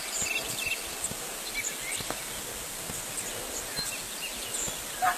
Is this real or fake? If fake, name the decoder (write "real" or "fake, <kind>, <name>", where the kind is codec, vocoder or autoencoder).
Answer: real